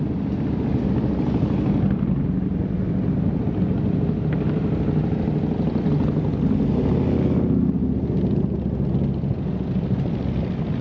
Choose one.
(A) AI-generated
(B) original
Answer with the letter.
B